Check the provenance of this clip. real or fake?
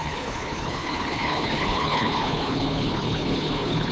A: fake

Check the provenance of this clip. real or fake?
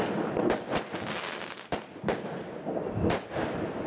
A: real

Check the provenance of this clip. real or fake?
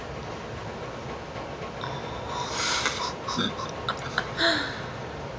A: real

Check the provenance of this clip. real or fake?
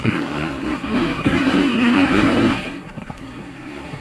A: fake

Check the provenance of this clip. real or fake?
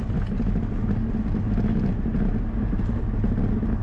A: real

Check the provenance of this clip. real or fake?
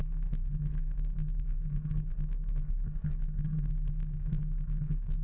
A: fake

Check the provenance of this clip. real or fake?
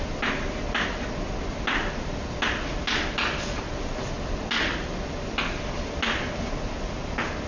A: real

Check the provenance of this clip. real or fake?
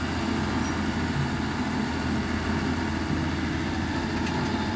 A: real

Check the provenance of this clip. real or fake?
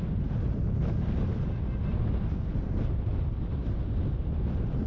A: real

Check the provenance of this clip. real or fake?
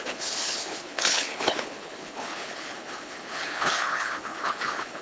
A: fake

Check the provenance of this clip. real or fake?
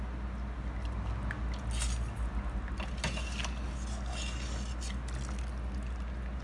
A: real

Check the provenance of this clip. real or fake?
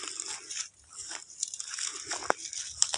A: real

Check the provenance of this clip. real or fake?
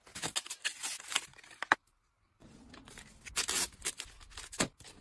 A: real